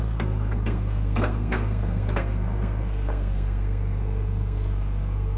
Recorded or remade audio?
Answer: remade